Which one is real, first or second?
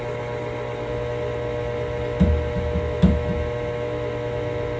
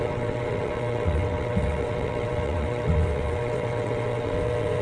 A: first